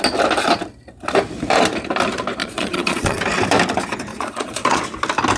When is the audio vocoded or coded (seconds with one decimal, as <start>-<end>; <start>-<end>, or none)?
2.4-3.2; 4.1-4.8